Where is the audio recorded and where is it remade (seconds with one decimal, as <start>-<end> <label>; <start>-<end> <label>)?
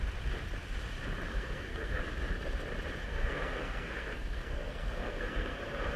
0.0-1.3 recorded; 1.3-2.0 remade; 2.0-3.0 recorded; 3.0-6.0 remade